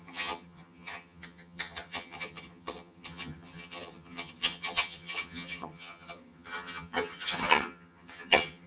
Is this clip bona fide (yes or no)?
no